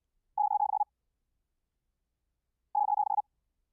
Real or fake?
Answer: real